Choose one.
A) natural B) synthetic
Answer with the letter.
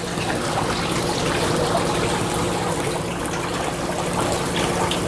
A